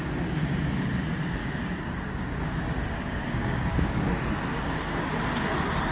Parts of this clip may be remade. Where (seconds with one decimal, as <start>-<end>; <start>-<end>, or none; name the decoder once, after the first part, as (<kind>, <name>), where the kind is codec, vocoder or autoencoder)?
1.4-4.1 (codec, DAC); 4.5-5.0